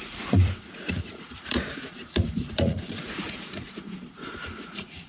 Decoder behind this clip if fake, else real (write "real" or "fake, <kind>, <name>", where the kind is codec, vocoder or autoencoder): fake, vocoder, Vocos